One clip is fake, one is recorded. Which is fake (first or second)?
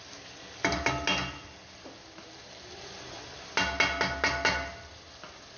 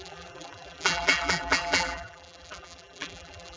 second